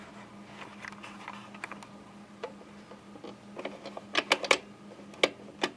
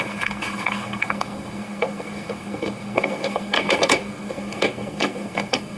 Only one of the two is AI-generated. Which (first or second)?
second